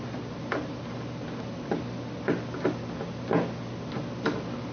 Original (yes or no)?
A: yes